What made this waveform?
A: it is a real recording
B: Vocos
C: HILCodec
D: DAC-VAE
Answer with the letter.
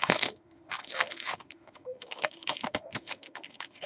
D